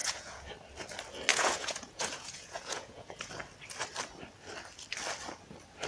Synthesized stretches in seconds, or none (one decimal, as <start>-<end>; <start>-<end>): 0.0-0.5; 1.3-3.3